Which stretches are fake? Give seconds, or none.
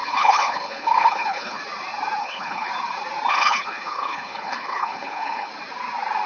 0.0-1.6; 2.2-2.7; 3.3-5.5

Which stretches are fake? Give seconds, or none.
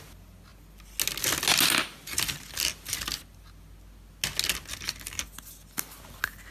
none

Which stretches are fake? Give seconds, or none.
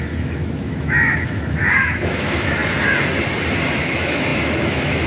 0.0-2.6; 3.8-5.1